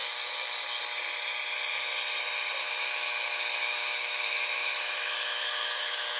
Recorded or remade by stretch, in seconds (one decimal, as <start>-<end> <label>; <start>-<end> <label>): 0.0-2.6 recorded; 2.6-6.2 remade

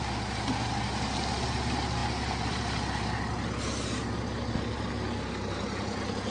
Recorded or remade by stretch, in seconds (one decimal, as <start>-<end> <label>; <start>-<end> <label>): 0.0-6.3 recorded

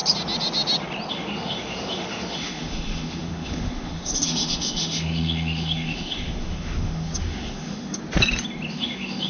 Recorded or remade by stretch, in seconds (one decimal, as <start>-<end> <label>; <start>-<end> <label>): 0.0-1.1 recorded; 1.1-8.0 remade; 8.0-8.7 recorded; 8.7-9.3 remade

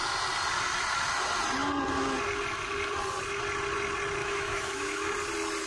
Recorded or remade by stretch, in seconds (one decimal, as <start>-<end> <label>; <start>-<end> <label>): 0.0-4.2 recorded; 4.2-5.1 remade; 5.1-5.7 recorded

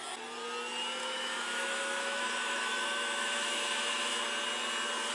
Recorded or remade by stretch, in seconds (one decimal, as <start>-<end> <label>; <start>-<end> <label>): 0.0-1.0 recorded; 1.0-4.1 remade; 4.1-5.1 recorded